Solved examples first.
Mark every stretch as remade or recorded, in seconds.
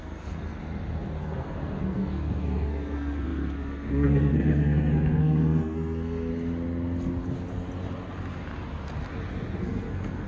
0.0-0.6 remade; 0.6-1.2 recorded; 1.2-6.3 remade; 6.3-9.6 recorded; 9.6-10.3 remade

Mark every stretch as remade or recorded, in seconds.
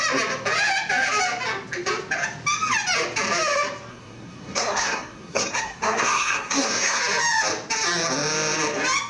0.0-3.9 recorded; 3.9-7.0 remade; 7.0-9.1 recorded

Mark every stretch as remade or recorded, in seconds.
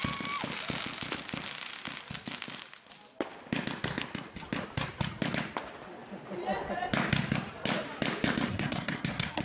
0.0-8.5 recorded; 8.5-9.4 remade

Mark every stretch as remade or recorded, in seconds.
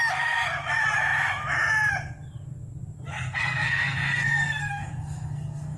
0.0-3.1 recorded; 3.1-5.8 remade